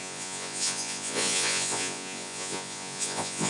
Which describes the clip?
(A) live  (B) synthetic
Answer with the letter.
B